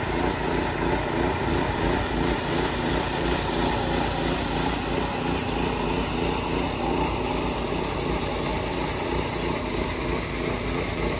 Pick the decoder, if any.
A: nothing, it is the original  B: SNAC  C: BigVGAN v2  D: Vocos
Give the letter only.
A